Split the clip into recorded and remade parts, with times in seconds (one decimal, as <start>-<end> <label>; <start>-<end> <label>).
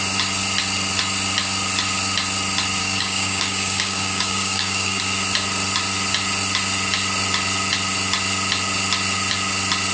0.0-2.8 recorded; 2.8-5.0 remade; 5.0-9.9 recorded